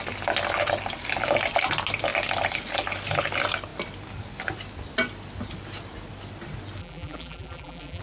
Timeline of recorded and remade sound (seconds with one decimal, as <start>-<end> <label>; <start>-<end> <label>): 0.0-6.8 recorded; 6.8-8.0 remade